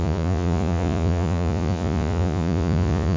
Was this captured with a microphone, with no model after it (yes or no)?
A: no